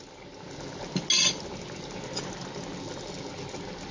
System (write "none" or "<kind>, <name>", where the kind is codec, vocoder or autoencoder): none